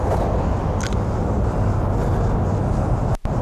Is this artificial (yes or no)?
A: no